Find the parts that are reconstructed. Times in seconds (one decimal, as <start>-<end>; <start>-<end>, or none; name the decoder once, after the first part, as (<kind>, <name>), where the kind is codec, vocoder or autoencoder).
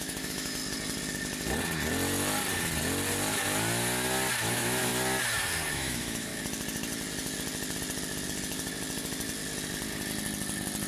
0.0-0.6 (autoencoder, DAC-VAE); 4.5-4.9; 5.7-6.3